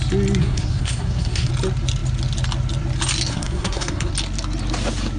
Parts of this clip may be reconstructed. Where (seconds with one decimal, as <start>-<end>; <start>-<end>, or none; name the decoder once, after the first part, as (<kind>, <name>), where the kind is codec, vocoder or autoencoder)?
0.4-1.5 (codec, SNAC); 3.3-4.1